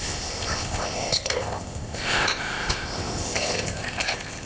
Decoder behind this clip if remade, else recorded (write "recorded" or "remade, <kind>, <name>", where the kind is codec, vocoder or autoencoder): remade, codec, ZipCodec